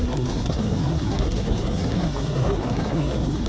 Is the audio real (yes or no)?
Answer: no